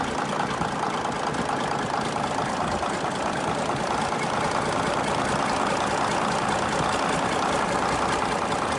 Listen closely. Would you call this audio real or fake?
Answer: real